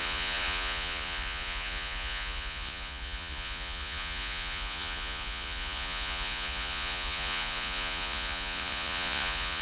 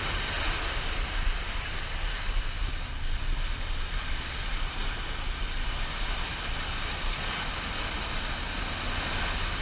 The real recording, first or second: second